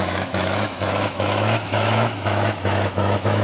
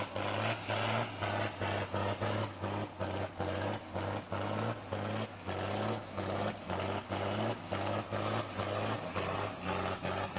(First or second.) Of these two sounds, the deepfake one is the first